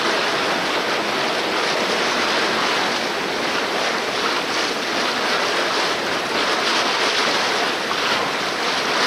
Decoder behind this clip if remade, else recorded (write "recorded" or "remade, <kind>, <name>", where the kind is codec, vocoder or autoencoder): recorded